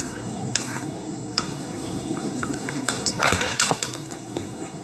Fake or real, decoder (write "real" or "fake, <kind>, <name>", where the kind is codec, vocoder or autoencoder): fake, codec, SNAC